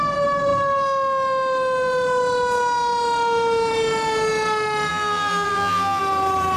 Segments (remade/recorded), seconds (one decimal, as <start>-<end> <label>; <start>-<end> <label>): 0.0-4.9 recorded; 4.9-6.0 remade; 6.0-6.6 recorded